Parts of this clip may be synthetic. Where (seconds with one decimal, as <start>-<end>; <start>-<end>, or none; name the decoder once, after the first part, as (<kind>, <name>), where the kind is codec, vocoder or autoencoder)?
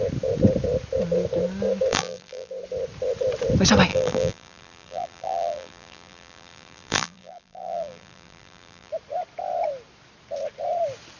1.9-2.5 (vocoder, BigVGAN v2); 3.9-8.9